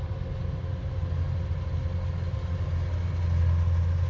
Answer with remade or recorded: recorded